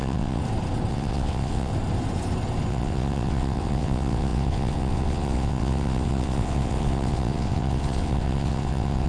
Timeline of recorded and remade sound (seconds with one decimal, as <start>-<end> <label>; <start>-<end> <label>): 0.0-0.4 remade; 0.4-0.9 recorded; 0.9-1.7 remade; 1.7-2.7 recorded; 2.7-9.1 remade